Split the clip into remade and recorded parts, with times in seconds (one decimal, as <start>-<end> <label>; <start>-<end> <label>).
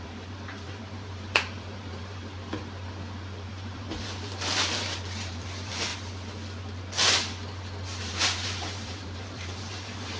0.0-2.2 remade; 2.2-3.5 recorded; 3.5-5.9 remade; 5.9-8.0 recorded; 8.0-10.2 remade